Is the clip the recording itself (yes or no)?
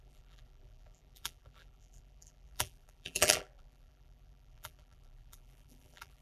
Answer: no